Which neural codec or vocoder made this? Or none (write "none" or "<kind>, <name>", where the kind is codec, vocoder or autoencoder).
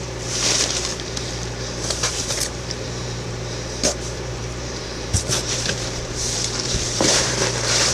vocoder, BigVGAN v2